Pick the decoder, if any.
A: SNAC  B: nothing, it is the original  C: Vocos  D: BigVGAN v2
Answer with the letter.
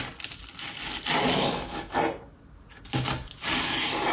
B